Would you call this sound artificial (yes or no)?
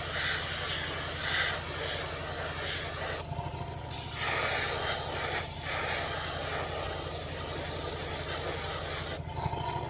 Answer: no